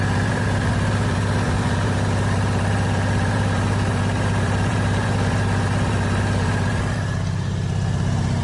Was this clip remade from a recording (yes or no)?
yes